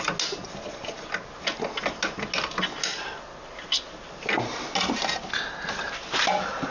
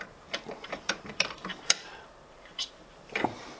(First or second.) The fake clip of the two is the second